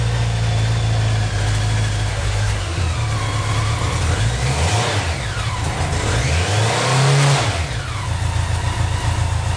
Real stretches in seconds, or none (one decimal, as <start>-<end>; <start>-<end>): 0.0-2.1; 2.8-9.6